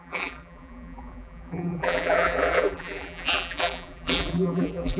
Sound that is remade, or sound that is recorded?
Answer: remade